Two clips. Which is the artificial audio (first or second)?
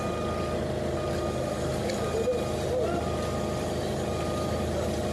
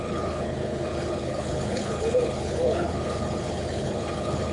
second